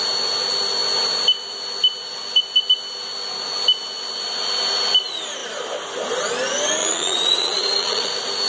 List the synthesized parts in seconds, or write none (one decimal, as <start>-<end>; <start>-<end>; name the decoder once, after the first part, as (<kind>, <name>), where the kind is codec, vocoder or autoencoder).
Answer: 6.8-8.1 (vocoder, Vocos)